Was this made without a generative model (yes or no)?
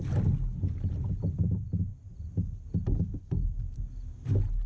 yes